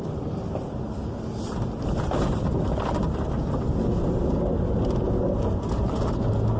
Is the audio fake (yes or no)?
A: no